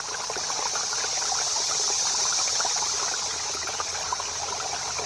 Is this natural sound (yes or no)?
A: yes